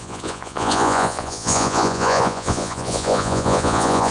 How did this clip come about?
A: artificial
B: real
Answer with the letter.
A